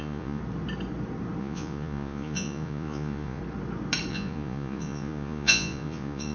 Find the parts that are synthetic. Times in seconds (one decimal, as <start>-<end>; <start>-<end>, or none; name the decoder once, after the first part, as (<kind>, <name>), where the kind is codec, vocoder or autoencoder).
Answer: 0.0-0.4 (vocoder, Vocos); 1.4-3.4; 4.1-6.3